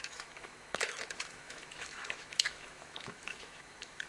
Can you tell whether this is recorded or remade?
remade